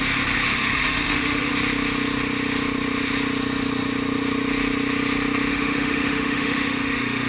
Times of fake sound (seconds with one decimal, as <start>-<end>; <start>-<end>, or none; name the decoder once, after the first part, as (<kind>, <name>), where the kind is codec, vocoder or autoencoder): 0.5-1.5 (autoencoder, DAC-VAE); 5.5-7.3